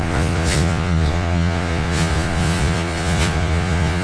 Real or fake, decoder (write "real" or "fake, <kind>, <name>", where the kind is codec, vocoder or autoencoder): fake, vocoder, Vocos